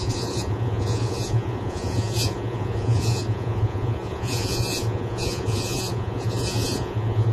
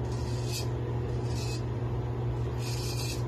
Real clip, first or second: second